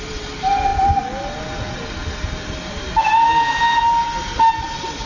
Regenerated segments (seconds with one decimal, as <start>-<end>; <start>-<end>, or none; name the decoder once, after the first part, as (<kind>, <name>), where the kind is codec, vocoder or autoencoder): none